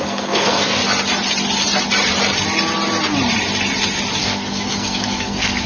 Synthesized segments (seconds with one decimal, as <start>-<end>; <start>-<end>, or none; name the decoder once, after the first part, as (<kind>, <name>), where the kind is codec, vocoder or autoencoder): 0.0-0.8 (codec, SNAC); 4.2-5.7

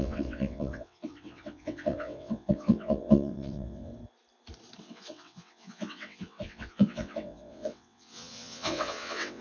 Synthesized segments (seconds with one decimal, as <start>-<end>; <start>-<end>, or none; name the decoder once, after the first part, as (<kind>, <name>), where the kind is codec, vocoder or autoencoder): 0.0-3.9 (vocoder, WaveNeXt); 4.8-9.4